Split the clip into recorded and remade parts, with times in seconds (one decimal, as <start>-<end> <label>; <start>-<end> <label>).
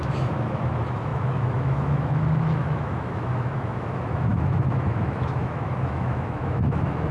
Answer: 0.0-7.1 remade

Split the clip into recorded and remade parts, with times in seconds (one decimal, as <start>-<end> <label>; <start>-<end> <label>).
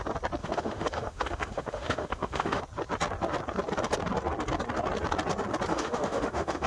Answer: 0.0-0.4 recorded; 0.4-2.6 remade; 2.6-5.7 recorded; 5.7-6.7 remade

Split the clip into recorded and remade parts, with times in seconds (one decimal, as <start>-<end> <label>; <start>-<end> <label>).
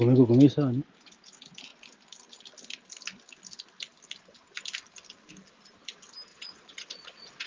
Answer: 0.0-6.3 recorded; 6.3-7.5 remade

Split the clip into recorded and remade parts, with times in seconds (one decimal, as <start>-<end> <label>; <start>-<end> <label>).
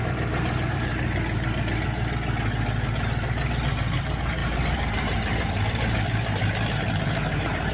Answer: 0.0-0.9 remade; 0.9-4.0 recorded; 4.0-7.7 remade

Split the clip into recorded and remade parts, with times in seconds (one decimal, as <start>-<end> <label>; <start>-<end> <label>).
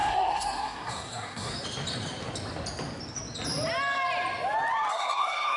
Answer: 0.0-1.5 remade; 1.5-4.9 recorded; 4.9-5.6 remade